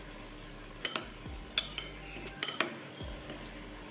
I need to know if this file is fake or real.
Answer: real